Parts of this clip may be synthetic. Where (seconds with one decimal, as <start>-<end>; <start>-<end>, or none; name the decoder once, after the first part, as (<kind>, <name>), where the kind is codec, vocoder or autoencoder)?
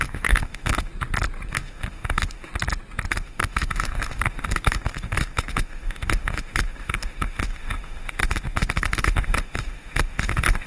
0.0-0.9 (autoencoder, DAC-VAE); 1.5-2.5; 3.1-10.7